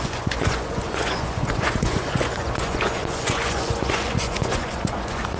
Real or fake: fake